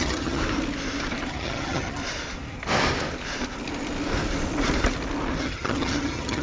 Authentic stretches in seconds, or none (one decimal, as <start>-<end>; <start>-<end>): 0.4-1.3; 2.0-5.4